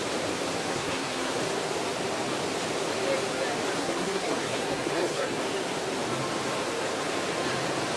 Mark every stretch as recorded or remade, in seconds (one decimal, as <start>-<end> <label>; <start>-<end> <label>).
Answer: 0.0-0.7 recorded; 0.7-1.4 remade; 1.4-3.8 recorded; 3.8-5.4 remade; 5.4-8.0 recorded